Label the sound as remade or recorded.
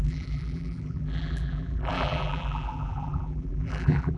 remade